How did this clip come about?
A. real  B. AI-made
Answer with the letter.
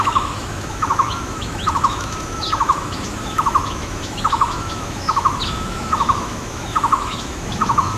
B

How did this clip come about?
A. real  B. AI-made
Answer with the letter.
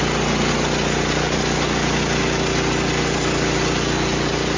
A